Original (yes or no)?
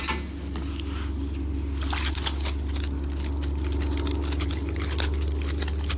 yes